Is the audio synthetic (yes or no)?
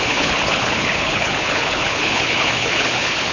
yes